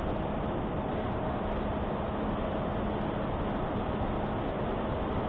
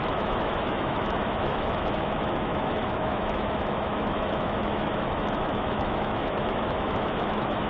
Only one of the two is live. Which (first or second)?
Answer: first